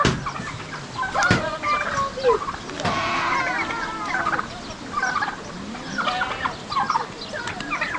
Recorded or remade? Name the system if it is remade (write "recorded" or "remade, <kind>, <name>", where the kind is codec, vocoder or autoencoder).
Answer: recorded